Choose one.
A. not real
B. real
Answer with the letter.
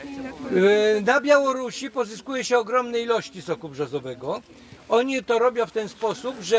B